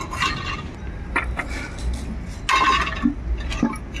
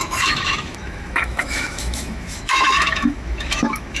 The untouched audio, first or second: first